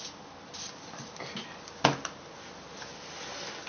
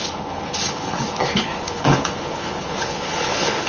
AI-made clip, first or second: second